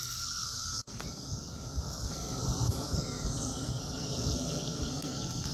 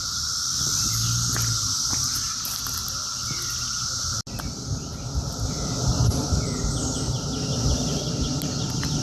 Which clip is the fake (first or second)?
first